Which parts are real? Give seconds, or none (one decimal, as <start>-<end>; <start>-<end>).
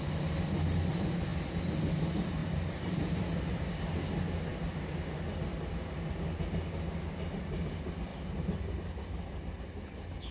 0.0-2.4; 3.4-8.1; 8.7-10.3